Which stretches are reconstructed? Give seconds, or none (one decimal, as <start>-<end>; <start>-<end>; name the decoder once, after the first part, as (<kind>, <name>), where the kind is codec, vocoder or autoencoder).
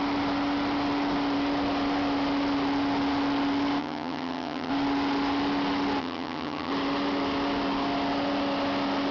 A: 3.8-4.7 (vocoder, HiFi-GAN); 6.0-6.7